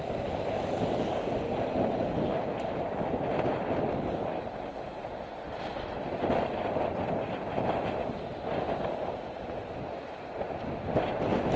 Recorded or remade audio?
recorded